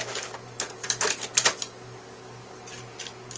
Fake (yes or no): no